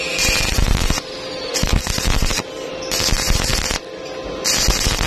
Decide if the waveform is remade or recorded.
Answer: recorded